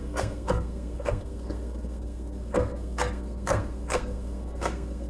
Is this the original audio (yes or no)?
no